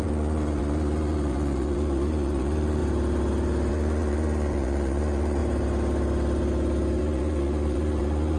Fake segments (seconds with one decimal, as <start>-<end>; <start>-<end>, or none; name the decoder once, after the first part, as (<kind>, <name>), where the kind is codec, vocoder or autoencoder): 0.0-2.8 (vocoder, Vocos); 3.7-5.4; 7.0-8.4

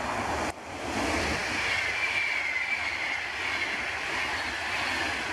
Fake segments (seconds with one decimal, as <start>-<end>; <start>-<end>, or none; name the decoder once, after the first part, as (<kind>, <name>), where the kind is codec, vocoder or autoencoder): none

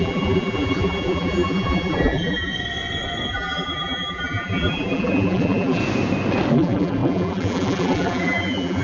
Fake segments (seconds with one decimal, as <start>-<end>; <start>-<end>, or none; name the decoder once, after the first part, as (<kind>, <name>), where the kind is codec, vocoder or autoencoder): 0.0-2.5 (vocoder, BigVGAN v2); 3.3-5.8; 6.5-8.8